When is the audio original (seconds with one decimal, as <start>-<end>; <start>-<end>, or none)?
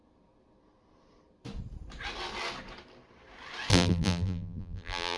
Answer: 0.0-3.7